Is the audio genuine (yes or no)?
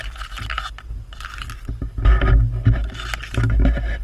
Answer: yes